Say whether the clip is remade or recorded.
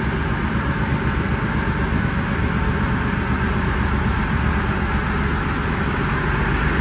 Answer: recorded